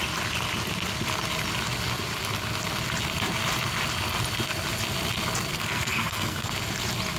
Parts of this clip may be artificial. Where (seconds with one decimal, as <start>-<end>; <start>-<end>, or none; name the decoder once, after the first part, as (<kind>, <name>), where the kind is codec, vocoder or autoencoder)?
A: 5.5-6.5 (codec, SNAC)